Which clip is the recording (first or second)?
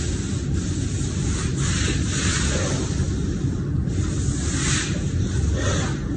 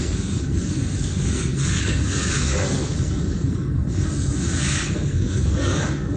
first